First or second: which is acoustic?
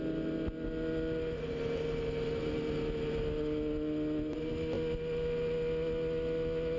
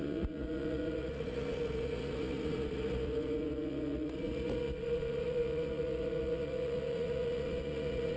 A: first